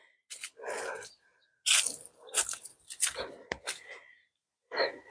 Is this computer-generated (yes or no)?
no